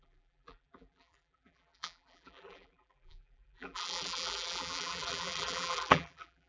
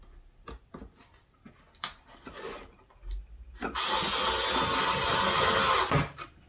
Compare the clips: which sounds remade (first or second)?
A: first